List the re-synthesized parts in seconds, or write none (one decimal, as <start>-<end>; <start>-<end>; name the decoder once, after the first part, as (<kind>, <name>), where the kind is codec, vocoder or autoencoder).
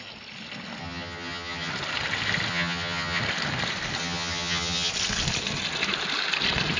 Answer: 0.8-1.7 (vocoder, HiFi-GAN); 2.5-3.2; 4.0-4.9